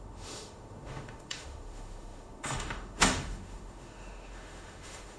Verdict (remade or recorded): remade